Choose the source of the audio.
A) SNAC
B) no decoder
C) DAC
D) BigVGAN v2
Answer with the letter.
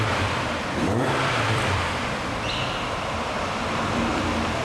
D